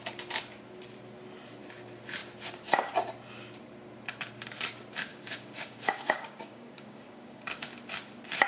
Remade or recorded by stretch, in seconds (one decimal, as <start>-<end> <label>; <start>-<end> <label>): 0.0-5.1 recorded; 5.1-7.7 remade; 7.7-8.5 recorded